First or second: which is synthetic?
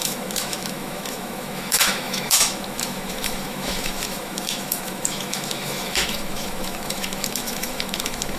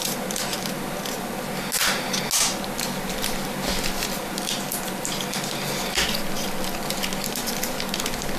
first